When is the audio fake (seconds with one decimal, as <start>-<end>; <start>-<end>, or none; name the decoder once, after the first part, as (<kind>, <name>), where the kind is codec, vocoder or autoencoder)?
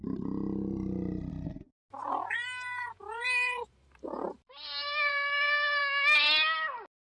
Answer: 2.0-5.8 (vocoder, BigVGAN v2)